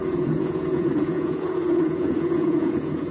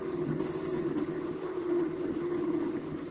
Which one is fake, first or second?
first